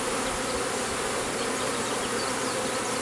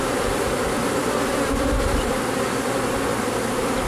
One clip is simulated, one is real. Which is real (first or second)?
first